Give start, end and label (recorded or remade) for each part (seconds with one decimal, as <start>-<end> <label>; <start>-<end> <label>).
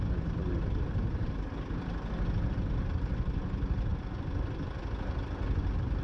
0.0-0.5 recorded; 0.5-1.5 remade; 1.5-6.0 recorded